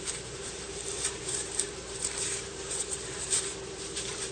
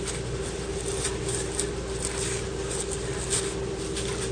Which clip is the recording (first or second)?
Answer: second